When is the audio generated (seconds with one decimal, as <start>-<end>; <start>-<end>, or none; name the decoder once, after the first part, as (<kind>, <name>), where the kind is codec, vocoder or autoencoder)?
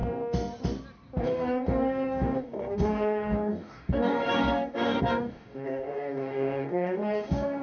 1.2-7.6 (codec, DAC)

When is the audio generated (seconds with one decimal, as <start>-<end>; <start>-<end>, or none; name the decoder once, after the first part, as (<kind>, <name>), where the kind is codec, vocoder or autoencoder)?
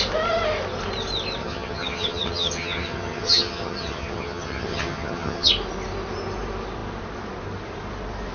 1.4-5.5 (vocoder, HiFi-GAN)